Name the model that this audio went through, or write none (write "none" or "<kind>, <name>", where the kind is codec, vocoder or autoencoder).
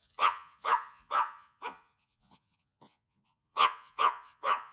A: vocoder, Vocos